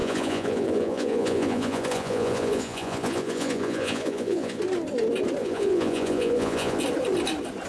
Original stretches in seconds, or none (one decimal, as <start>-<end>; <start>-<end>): 4.6-5.4; 6.8-7.7